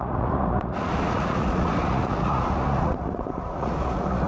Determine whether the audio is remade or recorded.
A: remade